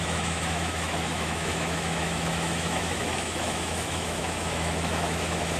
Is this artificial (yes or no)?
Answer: yes